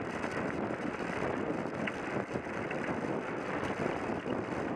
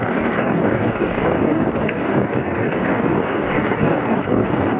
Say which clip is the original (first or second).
first